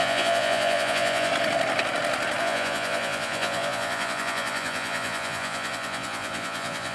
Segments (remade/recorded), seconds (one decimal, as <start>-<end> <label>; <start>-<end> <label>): 0.0-1.3 remade; 1.3-2.4 recorded; 2.4-6.9 remade